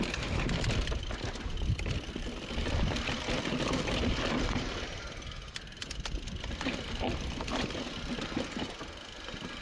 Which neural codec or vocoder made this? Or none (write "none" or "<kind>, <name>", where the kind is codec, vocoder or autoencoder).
vocoder, BigVGAN v2